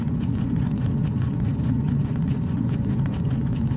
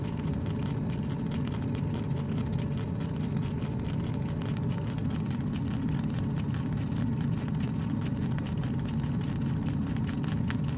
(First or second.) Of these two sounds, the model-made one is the first